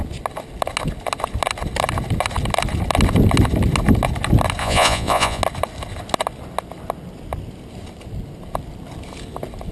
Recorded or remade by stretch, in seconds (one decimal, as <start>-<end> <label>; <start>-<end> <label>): 0.0-4.6 recorded; 4.6-5.4 remade; 5.4-9.7 recorded

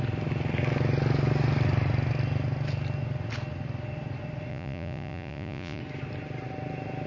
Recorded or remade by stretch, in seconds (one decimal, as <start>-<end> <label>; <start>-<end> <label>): 0.0-4.5 recorded; 4.5-5.8 remade; 5.8-7.1 recorded

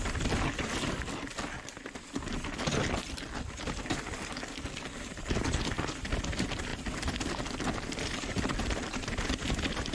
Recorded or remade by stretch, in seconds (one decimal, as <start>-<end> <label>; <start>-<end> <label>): 0.0-9.9 recorded

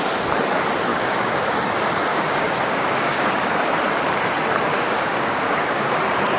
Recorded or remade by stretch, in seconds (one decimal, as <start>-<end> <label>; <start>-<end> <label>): 0.0-0.9 recorded; 0.9-1.6 remade; 1.6-2.1 recorded; 2.1-3.5 remade; 3.5-4.7 recorded; 4.7-6.0 remade; 6.0-6.4 recorded

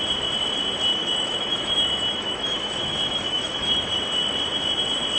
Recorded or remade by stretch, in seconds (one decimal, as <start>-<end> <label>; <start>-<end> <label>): 0.0-0.9 recorded; 0.9-4.0 remade; 4.0-5.2 recorded